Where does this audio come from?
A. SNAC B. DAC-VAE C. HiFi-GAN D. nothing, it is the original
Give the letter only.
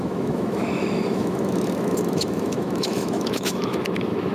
B